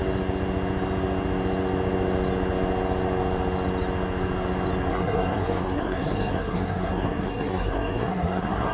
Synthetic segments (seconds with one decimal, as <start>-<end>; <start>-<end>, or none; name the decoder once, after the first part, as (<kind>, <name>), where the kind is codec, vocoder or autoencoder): 4.9-8.7 (codec, SNAC)